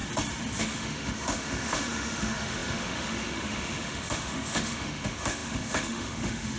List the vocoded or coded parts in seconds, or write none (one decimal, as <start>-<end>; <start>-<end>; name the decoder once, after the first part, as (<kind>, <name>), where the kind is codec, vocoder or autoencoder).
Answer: 0.6-6.6 (autoencoder, DAC-VAE)